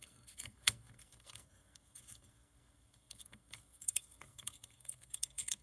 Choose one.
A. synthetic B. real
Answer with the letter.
A